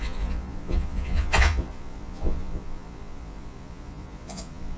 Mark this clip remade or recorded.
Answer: remade